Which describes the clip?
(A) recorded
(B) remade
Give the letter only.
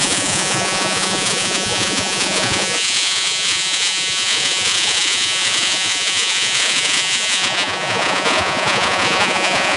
B